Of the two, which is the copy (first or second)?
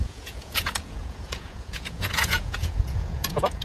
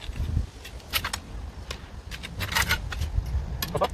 first